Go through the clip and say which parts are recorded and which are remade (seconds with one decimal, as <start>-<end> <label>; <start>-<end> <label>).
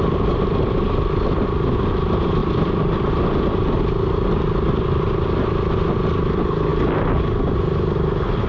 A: 0.0-8.5 recorded